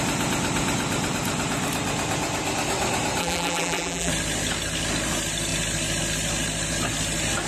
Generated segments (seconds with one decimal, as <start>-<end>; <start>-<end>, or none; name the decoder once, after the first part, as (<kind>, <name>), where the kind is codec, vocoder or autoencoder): 3.2-4.1 (vocoder, BigVGAN v2)